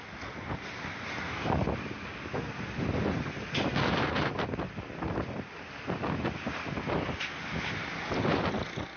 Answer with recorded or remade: recorded